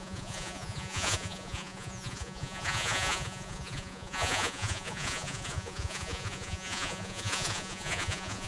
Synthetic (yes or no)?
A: yes